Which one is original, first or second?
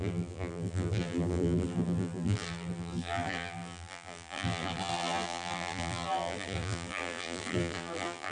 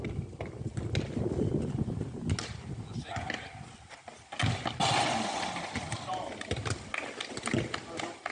second